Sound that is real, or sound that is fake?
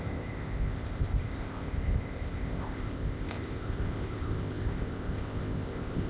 fake